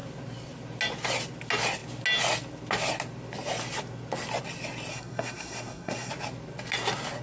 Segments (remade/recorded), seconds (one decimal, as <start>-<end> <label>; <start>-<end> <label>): 0.0-4.9 recorded; 4.9-6.1 remade; 6.1-7.2 recorded